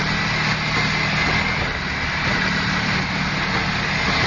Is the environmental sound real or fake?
real